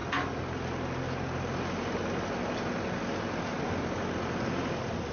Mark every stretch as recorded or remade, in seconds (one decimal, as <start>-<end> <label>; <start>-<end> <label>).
0.0-5.1 recorded